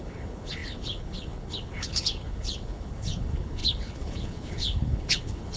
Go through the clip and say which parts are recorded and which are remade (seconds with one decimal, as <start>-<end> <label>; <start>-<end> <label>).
0.0-5.6 remade